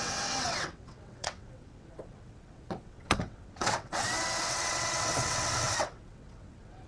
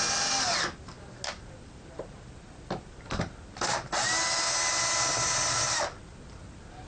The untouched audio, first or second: second